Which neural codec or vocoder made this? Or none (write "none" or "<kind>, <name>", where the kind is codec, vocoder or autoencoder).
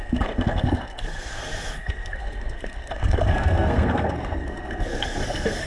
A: codec, SNAC